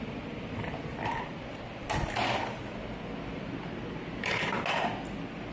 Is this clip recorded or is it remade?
recorded